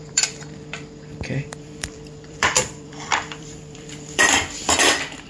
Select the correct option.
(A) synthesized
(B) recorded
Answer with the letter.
A